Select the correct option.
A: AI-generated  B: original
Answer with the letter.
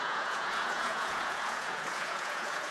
A